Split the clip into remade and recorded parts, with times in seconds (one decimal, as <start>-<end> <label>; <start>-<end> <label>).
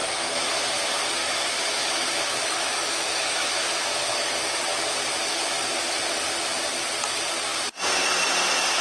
0.0-0.6 remade; 0.6-1.2 recorded; 1.2-4.6 remade; 4.6-8.8 recorded